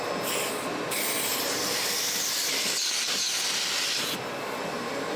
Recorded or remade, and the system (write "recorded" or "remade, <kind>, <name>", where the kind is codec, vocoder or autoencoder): recorded